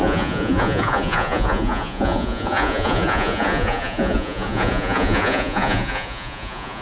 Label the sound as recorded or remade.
remade